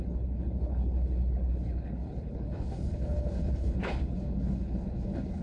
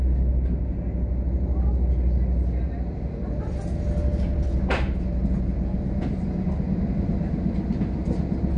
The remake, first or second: first